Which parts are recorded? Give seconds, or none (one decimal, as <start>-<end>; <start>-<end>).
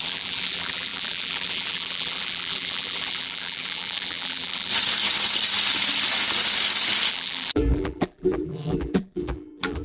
4.7-7.1